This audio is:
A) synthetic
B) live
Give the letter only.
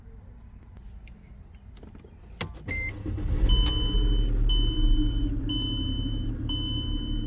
B